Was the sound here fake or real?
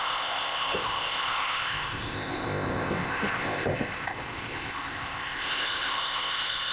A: fake